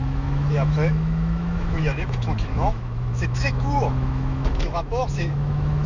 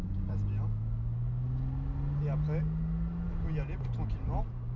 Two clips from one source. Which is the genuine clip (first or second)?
second